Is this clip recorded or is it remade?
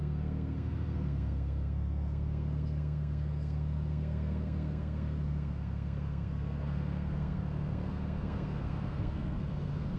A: remade